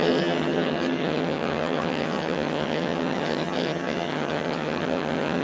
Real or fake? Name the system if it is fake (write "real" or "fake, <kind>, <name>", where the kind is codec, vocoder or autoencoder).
fake, vocoder, HiFi-GAN